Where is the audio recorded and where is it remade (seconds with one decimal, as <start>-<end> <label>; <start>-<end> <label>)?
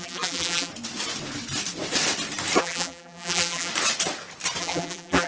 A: 0.0-0.7 remade; 0.7-2.6 recorded; 2.6-3.7 remade; 3.7-4.6 recorded; 4.6-5.3 remade